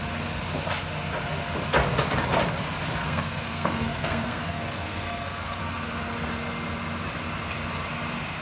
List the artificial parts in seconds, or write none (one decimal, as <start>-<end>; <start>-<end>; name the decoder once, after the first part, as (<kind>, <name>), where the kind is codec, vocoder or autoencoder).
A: 3.0-5.6 (codec, SNAC)